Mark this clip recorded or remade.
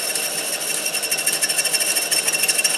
recorded